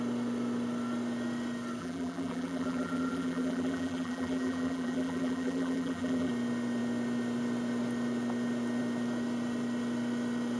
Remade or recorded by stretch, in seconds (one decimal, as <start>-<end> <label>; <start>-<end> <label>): 0.0-1.8 recorded; 1.8-6.3 remade; 6.3-10.6 recorded